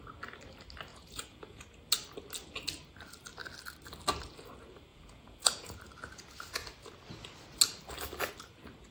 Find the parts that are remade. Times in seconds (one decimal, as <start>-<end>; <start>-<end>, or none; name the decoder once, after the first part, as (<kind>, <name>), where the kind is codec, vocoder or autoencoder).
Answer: 0.9-1.6 (vocoder, Vocos); 4.9-5.8

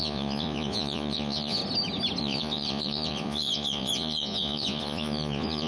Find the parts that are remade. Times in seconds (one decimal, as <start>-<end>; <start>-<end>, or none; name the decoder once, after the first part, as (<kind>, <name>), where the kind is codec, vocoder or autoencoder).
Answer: 0.0-1.6 (vocoder, Vocos); 2.2-5.7